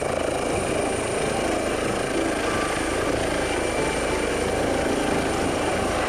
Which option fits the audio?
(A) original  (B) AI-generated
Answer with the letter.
A